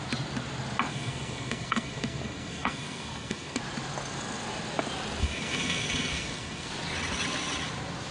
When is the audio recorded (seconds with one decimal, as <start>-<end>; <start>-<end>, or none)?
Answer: 0.0-0.9; 3.6-5.2; 6.7-8.1